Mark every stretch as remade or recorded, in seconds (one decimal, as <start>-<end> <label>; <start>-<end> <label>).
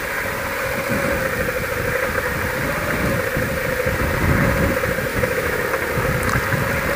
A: 0.0-5.1 recorded; 5.1-5.6 remade; 5.6-7.0 recorded